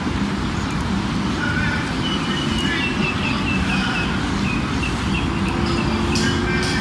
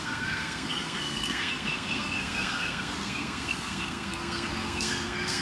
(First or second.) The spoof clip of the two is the second